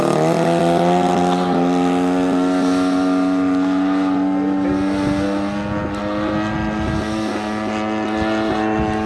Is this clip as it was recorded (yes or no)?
yes